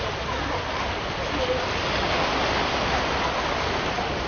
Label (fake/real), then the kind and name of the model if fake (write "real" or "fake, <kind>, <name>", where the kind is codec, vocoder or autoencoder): real